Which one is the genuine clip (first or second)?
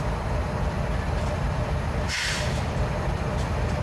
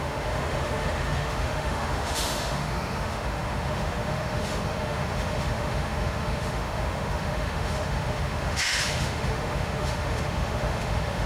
first